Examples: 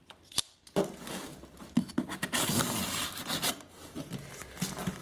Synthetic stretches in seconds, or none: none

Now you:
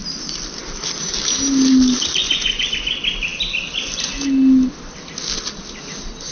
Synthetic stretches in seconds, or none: 2.2-2.7 (vocoder, Vocos)